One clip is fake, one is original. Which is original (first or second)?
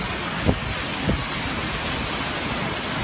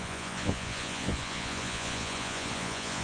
first